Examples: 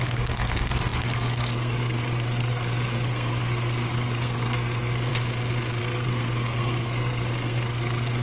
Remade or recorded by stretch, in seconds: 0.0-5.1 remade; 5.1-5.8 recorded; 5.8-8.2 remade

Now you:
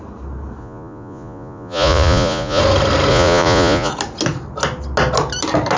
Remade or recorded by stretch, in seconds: 0.0-0.6 recorded; 0.6-2.6 remade; 2.6-3.1 recorded; 3.1-3.9 remade; 3.9-5.8 recorded

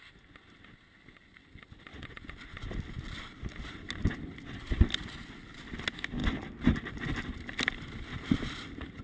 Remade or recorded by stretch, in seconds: 0.0-9.0 recorded